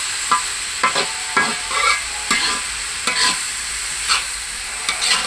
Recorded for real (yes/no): yes